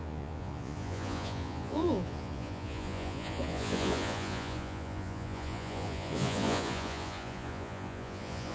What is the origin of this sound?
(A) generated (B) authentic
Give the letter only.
A